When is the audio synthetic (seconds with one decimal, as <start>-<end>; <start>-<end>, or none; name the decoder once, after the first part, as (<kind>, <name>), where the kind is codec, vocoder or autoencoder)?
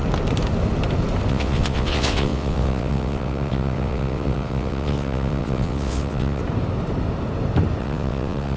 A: 1.3-6.4 (vocoder, WaveNeXt); 7.8-8.6